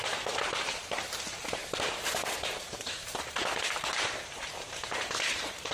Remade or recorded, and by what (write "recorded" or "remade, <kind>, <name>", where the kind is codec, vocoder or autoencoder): remade, vocoder, BigVGAN v2